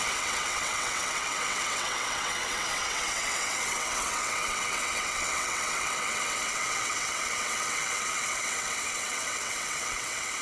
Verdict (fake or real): fake